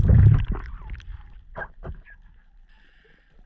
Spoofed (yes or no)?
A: no